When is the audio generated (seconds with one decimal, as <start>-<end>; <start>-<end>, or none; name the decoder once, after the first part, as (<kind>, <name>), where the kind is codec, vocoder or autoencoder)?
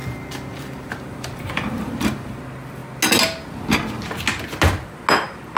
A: 0.0-2.4 (vocoder, BigVGAN v2)